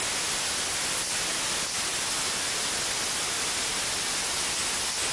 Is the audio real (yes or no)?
yes